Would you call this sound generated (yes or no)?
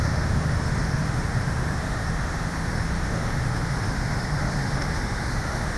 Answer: yes